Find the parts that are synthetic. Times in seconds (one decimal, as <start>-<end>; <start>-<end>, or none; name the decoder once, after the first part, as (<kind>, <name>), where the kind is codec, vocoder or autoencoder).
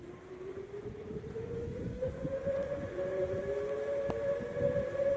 0.5-3.4 (vocoder, Vocos)